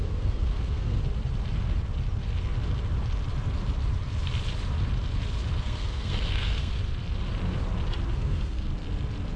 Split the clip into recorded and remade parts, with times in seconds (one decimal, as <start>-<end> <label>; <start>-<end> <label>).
0.0-1.0 remade; 1.0-5.6 recorded; 5.6-6.7 remade; 6.7-8.1 recorded; 8.1-8.7 remade; 8.7-9.4 recorded